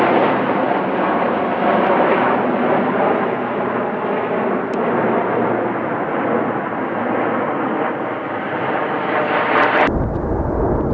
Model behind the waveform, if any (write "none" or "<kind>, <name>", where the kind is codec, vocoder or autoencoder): none